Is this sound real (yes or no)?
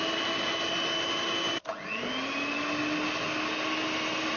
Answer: yes